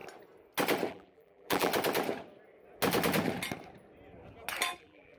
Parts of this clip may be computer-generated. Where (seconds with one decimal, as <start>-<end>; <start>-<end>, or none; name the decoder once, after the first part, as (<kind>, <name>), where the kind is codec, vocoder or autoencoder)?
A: 0.9-1.7 (vocoder, BigVGAN v2); 4.8-5.2